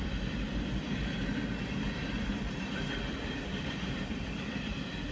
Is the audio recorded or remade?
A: remade